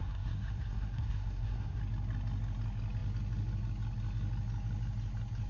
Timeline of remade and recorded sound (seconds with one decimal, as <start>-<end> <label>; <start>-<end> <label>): 0.0-1.8 remade; 1.8-5.5 recorded